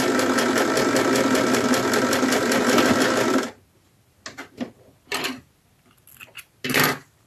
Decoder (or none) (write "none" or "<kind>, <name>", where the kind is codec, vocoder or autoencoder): none